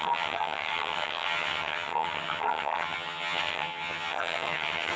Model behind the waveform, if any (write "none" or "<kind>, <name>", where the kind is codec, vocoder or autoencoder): vocoder, HiFi-GAN